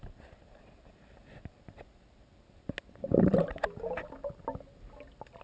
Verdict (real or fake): real